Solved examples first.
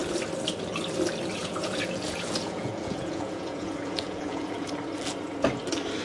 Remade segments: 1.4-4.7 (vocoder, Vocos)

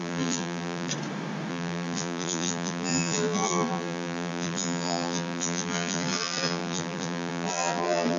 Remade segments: 0.0-0.9 (vocoder, BigVGAN v2); 1.5-8.2

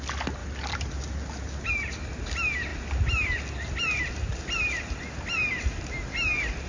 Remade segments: none

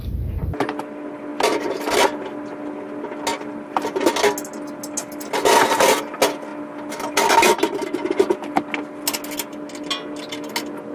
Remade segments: none

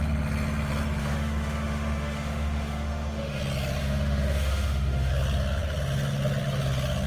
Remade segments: 1.0-3.4 (autoencoder, DAC-VAE); 3.8-5.1

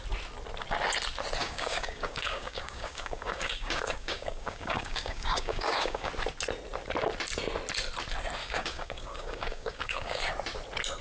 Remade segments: 1.4-6.1 (codec, DAC); 8.4-10.2